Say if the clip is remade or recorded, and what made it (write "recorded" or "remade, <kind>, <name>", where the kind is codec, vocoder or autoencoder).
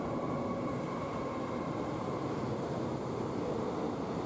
recorded